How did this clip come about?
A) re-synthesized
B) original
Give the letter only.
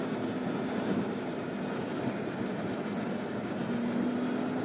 B